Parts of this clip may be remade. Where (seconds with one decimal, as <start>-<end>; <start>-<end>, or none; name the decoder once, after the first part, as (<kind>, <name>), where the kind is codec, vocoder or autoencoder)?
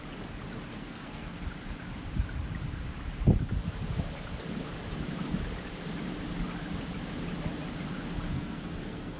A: 0.7-1.3 (codec, SNAC); 8.3-9.2